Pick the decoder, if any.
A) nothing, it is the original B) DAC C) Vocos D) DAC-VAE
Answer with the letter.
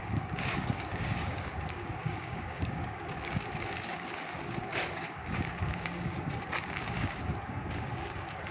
B